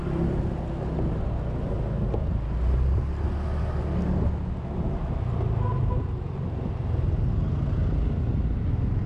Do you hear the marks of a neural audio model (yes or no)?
no